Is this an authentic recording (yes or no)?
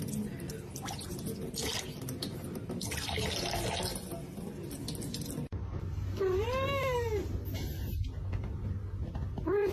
yes